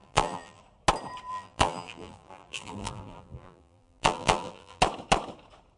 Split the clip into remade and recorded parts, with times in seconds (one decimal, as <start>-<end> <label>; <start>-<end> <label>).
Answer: 0.0-0.6 remade; 0.6-1.3 recorded; 1.3-4.8 remade; 4.8-5.8 recorded